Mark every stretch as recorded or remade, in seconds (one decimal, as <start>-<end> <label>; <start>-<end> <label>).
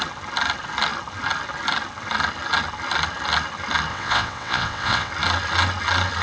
0.0-3.9 recorded; 3.9-5.1 remade; 5.1-6.2 recorded